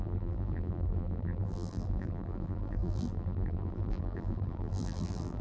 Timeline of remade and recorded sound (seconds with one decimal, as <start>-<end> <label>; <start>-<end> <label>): 0.0-5.4 remade